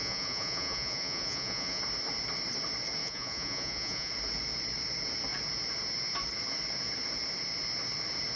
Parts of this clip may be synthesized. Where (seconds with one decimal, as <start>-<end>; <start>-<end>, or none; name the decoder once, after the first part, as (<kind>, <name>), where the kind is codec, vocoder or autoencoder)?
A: 0.0-1.8 (vocoder, Vocos); 3.0-4.1